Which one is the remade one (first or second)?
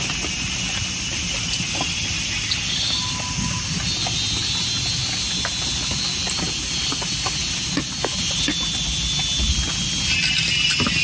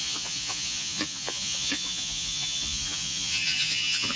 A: second